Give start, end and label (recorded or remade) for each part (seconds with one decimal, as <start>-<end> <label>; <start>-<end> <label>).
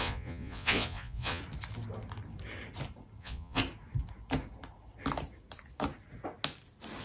0.0-1.4 remade; 1.4-3.2 recorded; 3.2-3.6 remade; 3.6-7.0 recorded